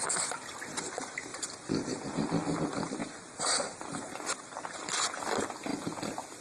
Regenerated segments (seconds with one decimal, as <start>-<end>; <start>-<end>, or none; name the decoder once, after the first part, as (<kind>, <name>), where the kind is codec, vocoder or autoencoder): 3.0-4.8 (vocoder, BigVGAN v2); 5.7-6.4